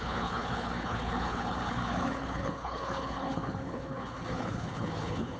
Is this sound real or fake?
fake